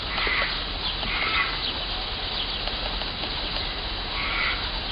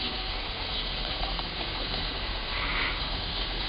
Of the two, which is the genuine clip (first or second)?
first